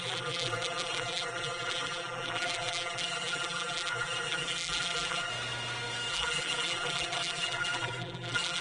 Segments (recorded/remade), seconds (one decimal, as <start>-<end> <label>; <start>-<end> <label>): 0.0-5.3 remade; 5.3-6.1 recorded; 6.1-8.6 remade